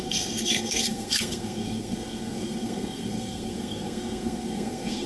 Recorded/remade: remade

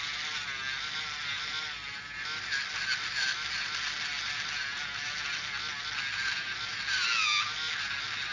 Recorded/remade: recorded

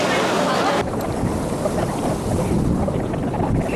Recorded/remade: recorded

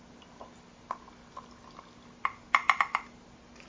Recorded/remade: recorded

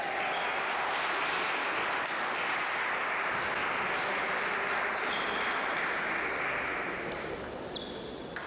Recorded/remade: recorded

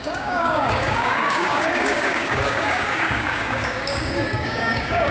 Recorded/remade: remade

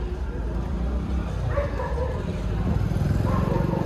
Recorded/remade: recorded